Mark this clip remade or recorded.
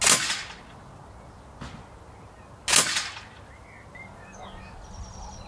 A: recorded